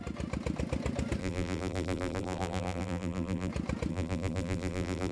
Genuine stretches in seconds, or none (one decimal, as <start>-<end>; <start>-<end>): 0.0-1.2; 3.5-3.9